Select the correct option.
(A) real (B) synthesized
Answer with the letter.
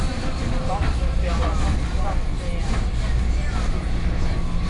A